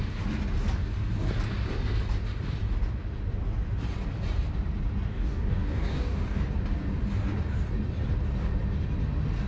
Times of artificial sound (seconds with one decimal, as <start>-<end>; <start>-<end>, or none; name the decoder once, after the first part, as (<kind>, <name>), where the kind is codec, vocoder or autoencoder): 5.1-6.4 (codec, DAC)